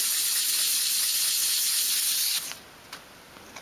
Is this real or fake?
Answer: real